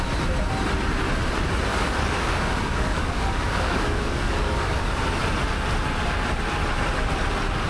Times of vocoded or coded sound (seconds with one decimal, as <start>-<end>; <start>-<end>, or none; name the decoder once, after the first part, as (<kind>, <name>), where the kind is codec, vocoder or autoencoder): 1.7-4.8 (codec, DAC)